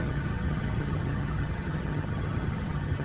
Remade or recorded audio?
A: remade